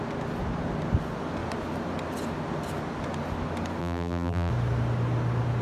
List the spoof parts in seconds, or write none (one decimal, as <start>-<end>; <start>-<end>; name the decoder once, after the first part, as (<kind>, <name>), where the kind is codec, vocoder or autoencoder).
3.8-4.5 (vocoder, BigVGAN v2)